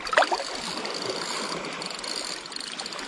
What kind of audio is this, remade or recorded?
recorded